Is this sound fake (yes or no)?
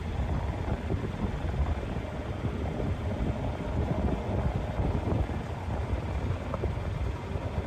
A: no